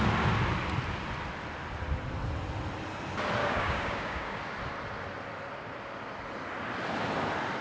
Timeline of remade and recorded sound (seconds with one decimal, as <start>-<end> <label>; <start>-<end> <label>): 0.0-3.4 recorded; 3.4-4.4 remade; 4.4-7.6 recorded